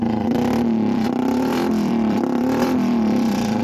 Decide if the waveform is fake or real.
fake